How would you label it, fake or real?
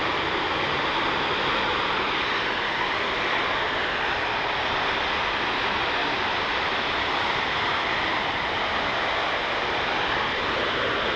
real